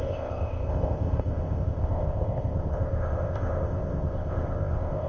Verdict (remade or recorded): remade